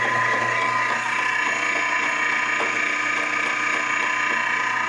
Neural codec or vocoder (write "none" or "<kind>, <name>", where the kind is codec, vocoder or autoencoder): none